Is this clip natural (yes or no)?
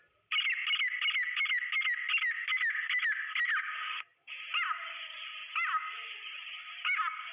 yes